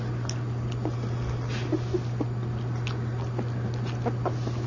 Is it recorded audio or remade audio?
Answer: recorded